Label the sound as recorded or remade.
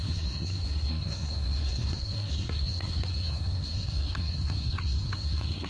remade